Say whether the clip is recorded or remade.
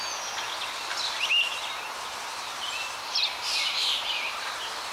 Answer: recorded